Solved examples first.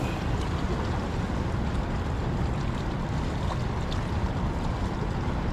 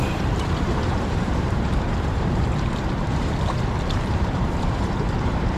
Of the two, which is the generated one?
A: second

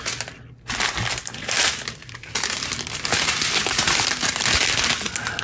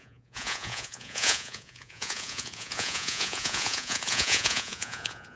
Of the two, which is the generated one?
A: second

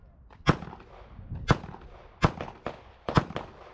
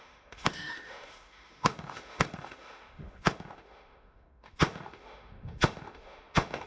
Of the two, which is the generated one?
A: second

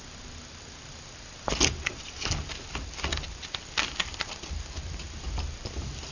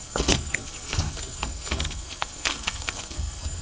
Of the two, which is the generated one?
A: second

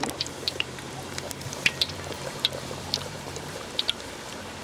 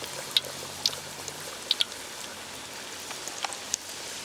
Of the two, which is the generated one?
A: first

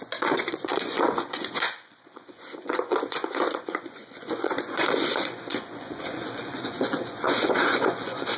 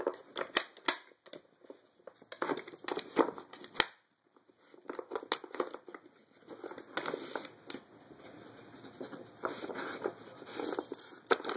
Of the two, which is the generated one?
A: first